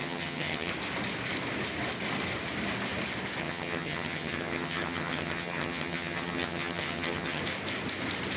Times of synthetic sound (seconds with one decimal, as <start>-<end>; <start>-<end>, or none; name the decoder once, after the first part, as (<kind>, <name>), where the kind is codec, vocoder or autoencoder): 0.0-0.7 (vocoder, HiFi-GAN); 3.4-7.4